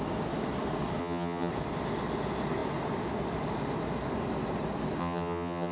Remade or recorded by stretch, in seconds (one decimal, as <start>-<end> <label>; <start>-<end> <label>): 0.0-1.0 recorded; 1.0-1.5 remade; 1.5-5.0 recorded; 5.0-5.7 remade